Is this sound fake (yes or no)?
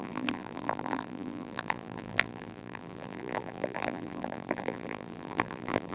yes